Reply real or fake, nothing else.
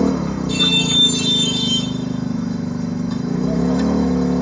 fake